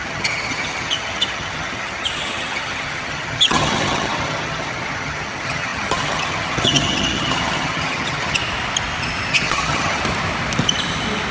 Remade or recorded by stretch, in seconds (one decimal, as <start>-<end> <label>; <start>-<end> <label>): 0.0-8.4 remade; 8.4-9.3 recorded; 9.3-10.0 remade; 10.0-11.3 recorded